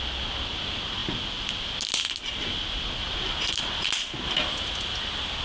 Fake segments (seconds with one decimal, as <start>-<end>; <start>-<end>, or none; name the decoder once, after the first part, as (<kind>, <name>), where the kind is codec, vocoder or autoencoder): none